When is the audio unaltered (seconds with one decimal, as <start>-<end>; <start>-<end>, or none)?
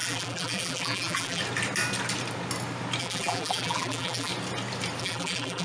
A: 1.4-3.0; 4.3-5.0